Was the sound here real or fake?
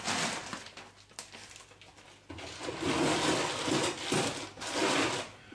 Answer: real